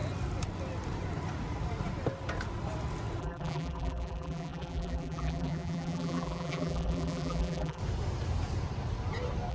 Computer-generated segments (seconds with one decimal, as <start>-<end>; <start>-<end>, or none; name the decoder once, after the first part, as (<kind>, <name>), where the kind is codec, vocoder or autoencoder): 3.2-7.8 (vocoder, BigVGAN v2)